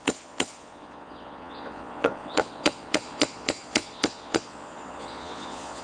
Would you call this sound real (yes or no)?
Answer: no